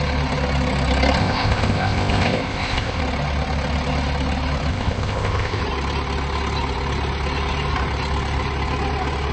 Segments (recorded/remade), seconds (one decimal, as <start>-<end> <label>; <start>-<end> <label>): 0.0-1.2 recorded; 1.2-3.0 remade; 3.0-4.7 recorded; 4.7-5.6 remade; 5.6-9.3 recorded